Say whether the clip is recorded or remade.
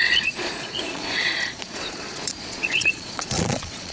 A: remade